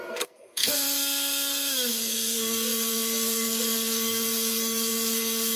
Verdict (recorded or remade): remade